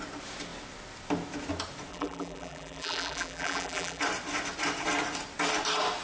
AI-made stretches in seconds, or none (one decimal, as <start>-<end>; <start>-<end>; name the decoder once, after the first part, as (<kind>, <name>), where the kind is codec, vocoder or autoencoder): 1.9-4.0 (vocoder, BigVGAN v2)